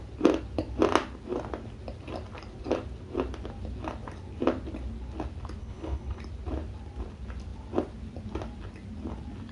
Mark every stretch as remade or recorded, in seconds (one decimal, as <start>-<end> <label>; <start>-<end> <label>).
0.0-5.6 recorded; 5.6-6.2 remade; 6.2-9.5 recorded